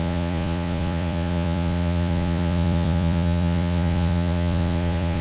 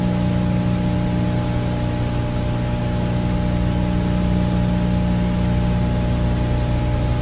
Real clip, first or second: second